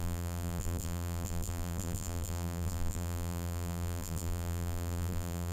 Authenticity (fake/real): fake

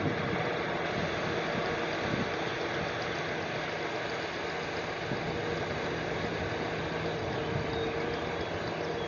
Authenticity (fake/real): real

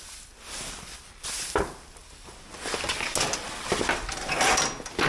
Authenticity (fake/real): real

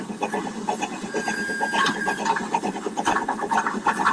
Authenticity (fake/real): real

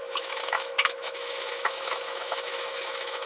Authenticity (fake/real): fake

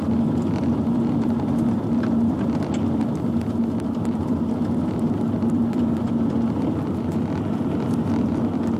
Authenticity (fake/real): real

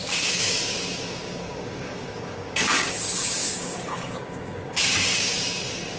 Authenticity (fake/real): fake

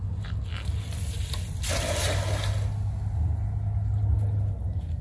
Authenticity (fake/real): real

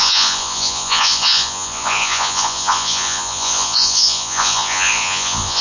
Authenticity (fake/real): fake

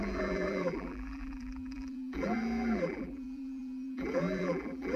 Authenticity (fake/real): fake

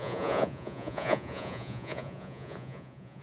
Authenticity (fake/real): fake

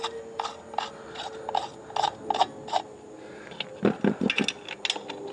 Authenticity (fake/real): real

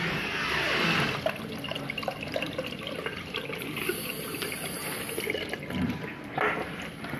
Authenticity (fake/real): real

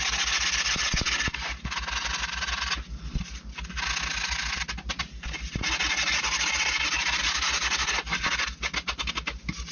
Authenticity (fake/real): real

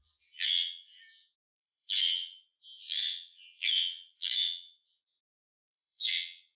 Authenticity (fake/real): fake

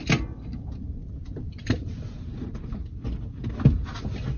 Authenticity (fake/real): real